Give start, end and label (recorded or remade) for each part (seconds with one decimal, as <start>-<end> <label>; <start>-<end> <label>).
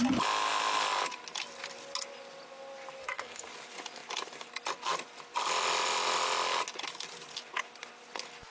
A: 0.0-3.0 recorded; 3.0-3.5 remade; 3.5-8.5 recorded